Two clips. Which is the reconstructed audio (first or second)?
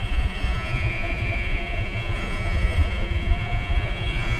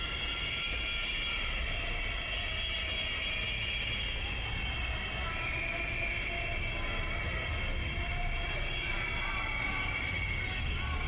first